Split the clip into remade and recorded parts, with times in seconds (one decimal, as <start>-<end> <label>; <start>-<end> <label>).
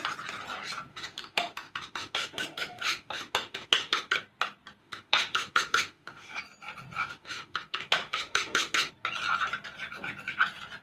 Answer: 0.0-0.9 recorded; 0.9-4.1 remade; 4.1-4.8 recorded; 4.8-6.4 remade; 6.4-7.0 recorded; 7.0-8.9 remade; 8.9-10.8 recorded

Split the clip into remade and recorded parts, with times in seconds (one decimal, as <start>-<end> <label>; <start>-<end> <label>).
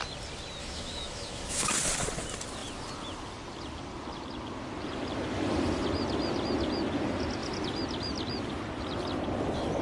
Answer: 0.0-0.6 recorded; 0.6-1.7 remade; 1.7-9.8 recorded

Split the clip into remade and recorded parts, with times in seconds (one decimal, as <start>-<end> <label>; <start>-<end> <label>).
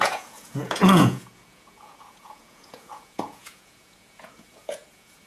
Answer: 0.0-5.3 remade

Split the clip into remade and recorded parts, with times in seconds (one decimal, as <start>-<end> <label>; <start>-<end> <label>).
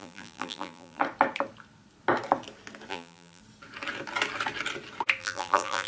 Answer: 0.0-1.0 remade; 1.0-2.9 recorded; 2.9-3.4 remade; 3.4-5.2 recorded; 5.2-5.9 remade